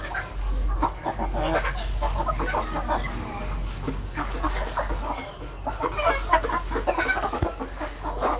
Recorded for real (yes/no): no